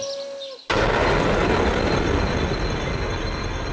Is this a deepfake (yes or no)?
no